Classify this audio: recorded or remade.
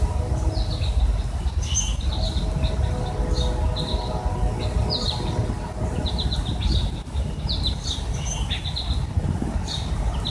recorded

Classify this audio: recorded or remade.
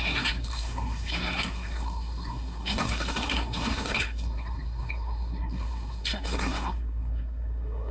remade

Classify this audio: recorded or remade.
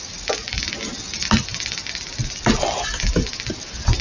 recorded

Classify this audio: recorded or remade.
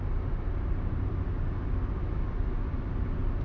recorded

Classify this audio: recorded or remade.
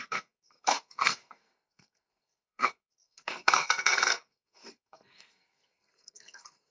remade